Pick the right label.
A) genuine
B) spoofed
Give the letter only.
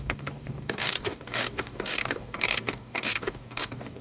B